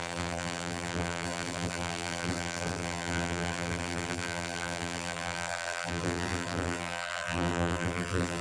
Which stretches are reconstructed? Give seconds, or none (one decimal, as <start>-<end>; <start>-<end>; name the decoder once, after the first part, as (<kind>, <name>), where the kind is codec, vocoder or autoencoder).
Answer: 0.0-8.4 (vocoder, BigVGAN v2)